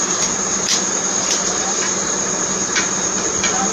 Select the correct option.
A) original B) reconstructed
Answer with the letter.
B